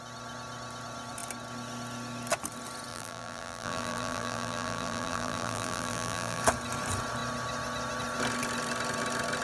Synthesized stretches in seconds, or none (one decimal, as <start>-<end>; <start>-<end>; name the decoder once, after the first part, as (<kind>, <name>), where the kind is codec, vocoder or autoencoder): 2.9-6.4 (vocoder, BigVGAN v2)